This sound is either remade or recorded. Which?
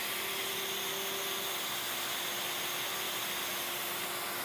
recorded